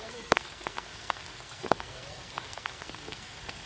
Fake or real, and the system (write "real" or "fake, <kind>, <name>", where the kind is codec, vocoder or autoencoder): fake, codec, SNAC